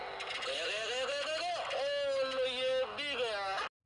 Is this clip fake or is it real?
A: real